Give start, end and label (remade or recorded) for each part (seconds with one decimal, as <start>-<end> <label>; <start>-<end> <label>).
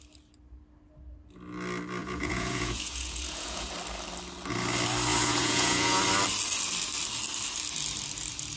0.0-2.0 recorded; 2.0-3.7 remade; 3.7-5.1 recorded; 5.1-6.0 remade; 6.0-8.6 recorded